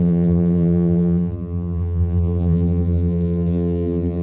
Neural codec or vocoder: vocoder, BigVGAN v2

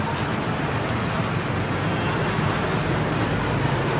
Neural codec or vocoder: none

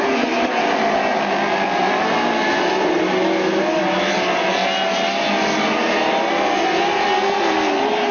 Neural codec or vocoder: none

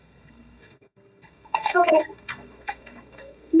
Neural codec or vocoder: codec, SNAC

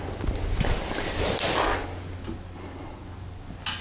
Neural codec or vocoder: none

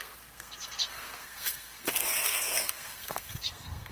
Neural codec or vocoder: codec, SNAC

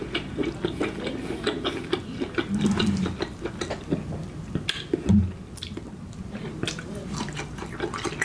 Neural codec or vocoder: none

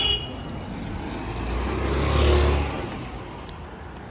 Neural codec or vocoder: none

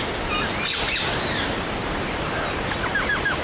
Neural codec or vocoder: none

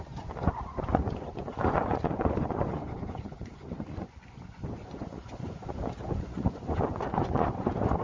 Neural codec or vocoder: vocoder, Vocos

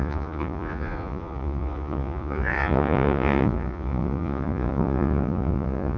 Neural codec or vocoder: vocoder, Vocos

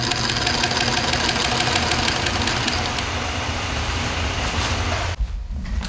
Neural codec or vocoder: none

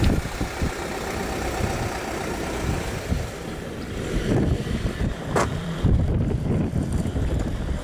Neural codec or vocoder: vocoder, BigVGAN v2